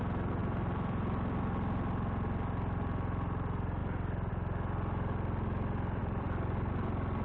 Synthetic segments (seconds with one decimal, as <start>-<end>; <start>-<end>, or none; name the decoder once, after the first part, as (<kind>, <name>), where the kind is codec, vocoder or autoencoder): 0.4-1.4 (vocoder, BigVGAN v2); 6.0-6.7

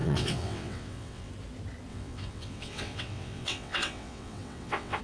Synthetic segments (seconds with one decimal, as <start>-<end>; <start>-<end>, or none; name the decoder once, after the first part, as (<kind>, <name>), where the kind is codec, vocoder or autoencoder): 0.0-1.3 (vocoder, WaveNeXt); 1.9-5.0